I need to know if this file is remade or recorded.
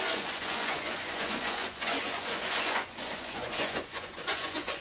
remade